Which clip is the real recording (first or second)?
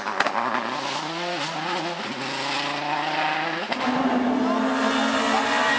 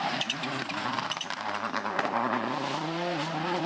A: first